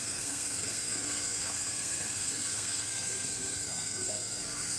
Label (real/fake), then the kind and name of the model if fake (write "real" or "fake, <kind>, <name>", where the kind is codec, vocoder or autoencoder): fake, codec, SNAC